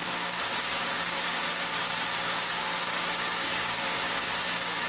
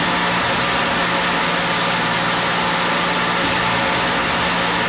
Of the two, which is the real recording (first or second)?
second